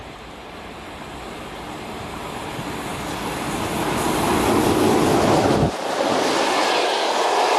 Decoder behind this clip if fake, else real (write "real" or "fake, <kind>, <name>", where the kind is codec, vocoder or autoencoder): real